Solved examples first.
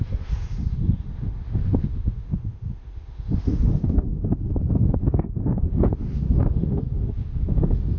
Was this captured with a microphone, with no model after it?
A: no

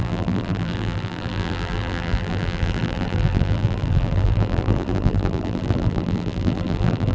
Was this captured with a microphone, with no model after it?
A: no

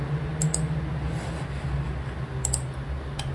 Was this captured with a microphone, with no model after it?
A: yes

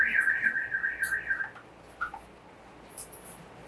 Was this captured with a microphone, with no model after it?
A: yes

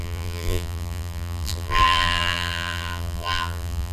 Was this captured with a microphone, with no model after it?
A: no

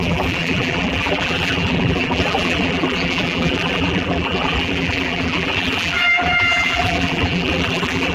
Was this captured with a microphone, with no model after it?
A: no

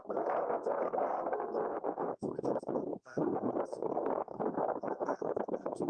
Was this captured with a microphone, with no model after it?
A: no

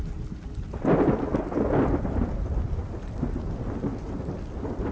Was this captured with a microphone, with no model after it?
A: yes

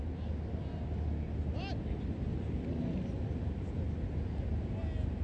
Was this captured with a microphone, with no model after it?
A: yes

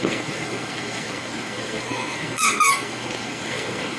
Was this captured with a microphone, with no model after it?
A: no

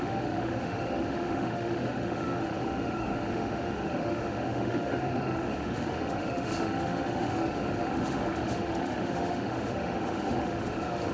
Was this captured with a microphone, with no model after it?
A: no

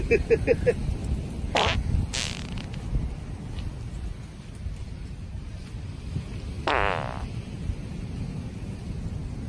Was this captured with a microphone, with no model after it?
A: yes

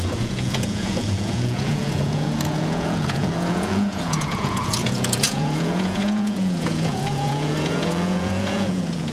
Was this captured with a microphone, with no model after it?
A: no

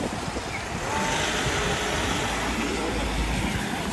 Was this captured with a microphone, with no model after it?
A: yes